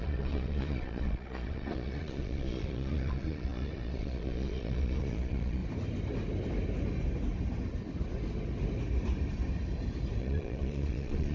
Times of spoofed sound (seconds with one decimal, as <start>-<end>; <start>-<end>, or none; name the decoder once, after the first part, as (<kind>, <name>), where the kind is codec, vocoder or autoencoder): 0.0-5.6 (vocoder, Vocos); 10.2-11.3